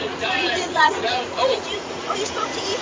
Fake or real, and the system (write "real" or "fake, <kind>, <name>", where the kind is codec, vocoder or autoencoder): fake, vocoder, Vocos